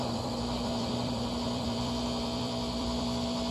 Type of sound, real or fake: fake